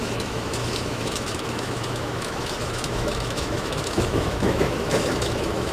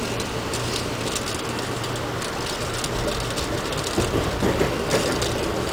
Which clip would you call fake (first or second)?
first